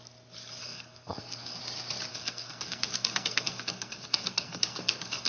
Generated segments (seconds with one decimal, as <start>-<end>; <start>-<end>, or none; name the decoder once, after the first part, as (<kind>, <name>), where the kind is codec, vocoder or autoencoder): 0.6-1.6 (codec, SNAC); 2.1-5.3